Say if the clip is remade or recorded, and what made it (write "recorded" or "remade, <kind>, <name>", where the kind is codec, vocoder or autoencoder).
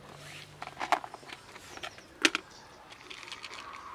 recorded